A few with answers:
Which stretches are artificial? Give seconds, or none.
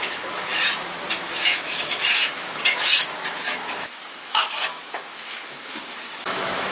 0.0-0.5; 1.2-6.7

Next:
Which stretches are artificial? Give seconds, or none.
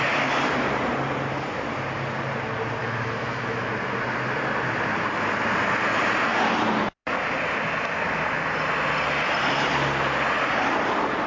2.8-3.7